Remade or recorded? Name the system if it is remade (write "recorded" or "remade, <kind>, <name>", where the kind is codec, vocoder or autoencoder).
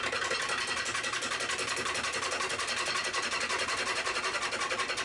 recorded